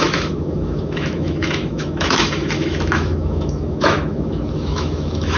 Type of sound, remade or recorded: remade